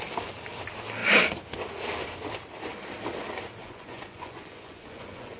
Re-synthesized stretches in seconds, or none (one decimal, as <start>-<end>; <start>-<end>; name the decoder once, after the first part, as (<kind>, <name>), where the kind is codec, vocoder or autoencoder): 3.6-5.4 (vocoder, Vocos)